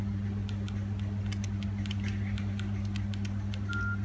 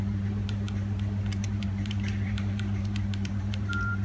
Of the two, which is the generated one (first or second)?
second